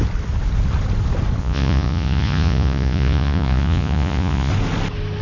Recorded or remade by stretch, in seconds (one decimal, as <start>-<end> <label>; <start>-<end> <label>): 0.0-1.4 recorded; 1.4-4.5 remade; 4.5-5.2 recorded